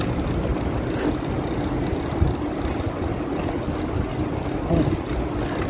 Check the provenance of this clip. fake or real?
real